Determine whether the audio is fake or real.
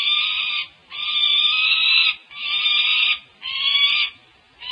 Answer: fake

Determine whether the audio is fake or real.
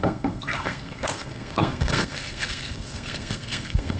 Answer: fake